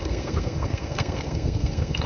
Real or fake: fake